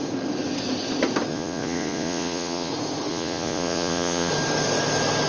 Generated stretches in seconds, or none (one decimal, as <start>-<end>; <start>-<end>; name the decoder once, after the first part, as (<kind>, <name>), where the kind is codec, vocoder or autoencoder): 1.3-2.7 (vocoder, Vocos); 3.1-4.3